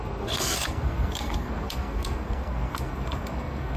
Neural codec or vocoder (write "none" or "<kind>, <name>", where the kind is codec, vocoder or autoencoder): codec, SNAC